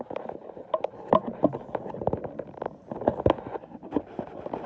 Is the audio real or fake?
real